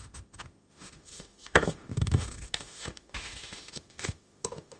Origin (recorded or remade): remade